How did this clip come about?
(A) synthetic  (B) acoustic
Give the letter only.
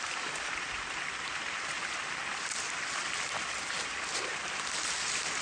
B